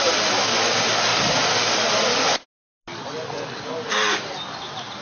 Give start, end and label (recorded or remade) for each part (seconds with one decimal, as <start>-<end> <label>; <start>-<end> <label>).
0.0-5.0 recorded